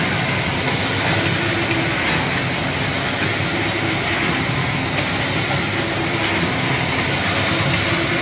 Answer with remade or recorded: recorded